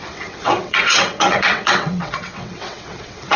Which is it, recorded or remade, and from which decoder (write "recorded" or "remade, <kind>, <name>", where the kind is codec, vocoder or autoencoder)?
remade, vocoder, WaveNeXt